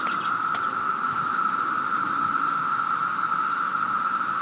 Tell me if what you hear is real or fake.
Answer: real